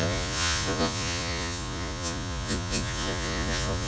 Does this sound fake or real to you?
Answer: fake